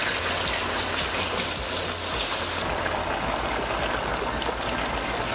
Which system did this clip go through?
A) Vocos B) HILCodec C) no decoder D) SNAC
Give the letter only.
C